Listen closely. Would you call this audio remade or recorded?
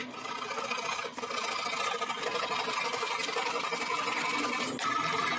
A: recorded